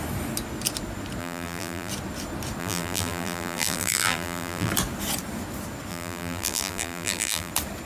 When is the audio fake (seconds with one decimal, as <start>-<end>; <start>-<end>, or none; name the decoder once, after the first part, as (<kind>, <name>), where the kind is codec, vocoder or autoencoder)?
1.2-1.9 (vocoder, BigVGAN v2); 2.6-4.7; 5.9-7.5

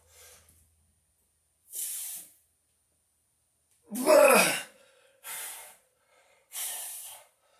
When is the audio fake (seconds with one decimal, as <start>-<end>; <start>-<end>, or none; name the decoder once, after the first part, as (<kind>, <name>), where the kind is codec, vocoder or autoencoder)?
4.1-7.6 (vocoder, BigVGAN v2)

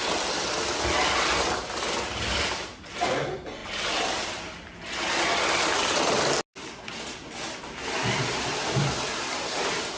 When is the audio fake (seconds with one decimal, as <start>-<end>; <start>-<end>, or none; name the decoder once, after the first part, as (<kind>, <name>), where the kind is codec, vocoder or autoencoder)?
none

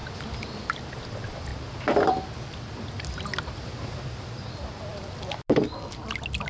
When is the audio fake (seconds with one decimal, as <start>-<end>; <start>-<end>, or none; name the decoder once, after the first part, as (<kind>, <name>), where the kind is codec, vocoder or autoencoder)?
none

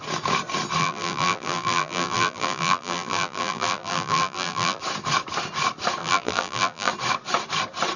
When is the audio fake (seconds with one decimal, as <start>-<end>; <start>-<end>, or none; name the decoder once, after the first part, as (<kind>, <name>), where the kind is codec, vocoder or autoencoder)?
0.8-4.8 (vocoder, BigVGAN v2); 6.0-6.9

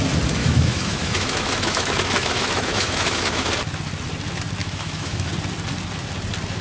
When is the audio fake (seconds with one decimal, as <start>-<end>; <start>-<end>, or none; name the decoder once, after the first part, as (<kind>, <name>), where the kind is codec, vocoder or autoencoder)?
0.4-3.5 (autoencoder, DAC-VAE); 4.6-5.3

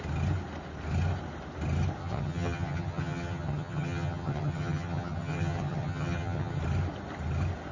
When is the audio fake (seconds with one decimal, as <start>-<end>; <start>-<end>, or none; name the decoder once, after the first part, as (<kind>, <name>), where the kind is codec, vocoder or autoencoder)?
2.0-6.6 (vocoder, HiFi-GAN)

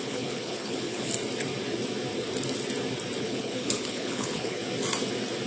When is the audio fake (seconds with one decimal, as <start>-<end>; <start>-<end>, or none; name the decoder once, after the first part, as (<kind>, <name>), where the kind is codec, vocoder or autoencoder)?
0.0-1.1 (codec, HILCodec); 3.2-4.6